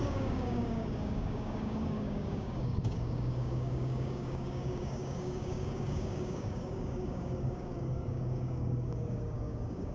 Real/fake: fake